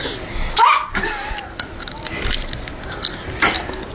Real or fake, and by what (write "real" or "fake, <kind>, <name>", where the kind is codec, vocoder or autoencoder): real